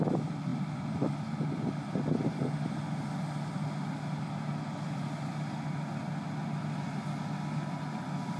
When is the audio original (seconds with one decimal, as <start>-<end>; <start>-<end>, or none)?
0.0-8.4

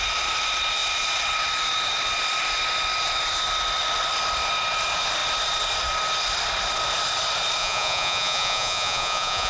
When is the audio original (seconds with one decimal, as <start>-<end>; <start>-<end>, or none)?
0.0-7.6